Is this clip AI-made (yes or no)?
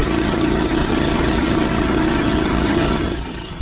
yes